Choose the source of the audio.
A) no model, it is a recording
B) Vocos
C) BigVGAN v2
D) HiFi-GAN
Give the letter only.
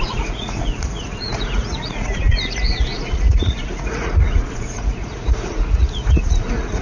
B